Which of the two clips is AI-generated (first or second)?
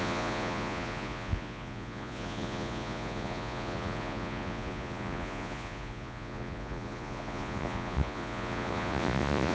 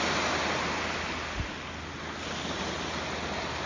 first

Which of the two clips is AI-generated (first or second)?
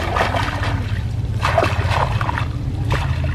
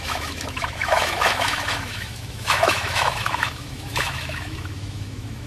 second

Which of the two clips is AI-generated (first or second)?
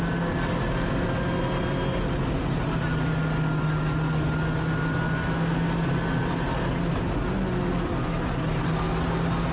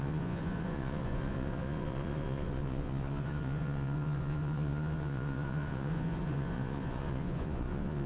second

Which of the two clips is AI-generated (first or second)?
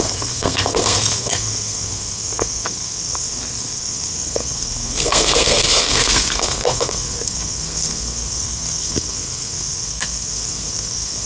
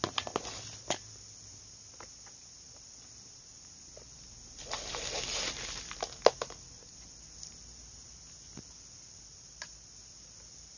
first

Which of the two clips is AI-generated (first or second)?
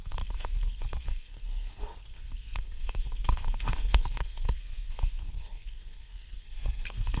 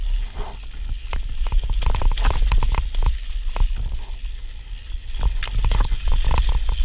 first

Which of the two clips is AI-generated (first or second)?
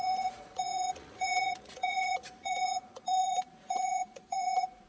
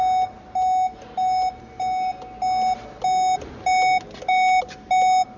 first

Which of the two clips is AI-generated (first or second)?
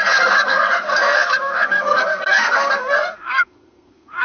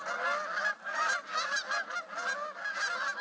first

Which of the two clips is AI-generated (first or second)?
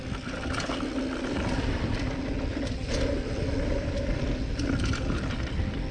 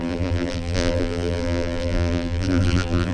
second